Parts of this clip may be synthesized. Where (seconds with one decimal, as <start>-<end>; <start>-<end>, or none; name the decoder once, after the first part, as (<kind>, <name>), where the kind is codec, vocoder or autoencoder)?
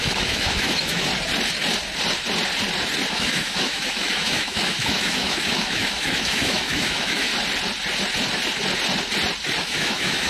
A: 0.0-1.1 (autoencoder, DAC-VAE); 3.1-7.3; 9.6-10.3